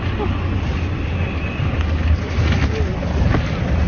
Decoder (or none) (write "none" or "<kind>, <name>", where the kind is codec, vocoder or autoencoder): none